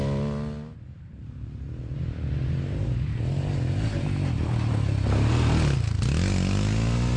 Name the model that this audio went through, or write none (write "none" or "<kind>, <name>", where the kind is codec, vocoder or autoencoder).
none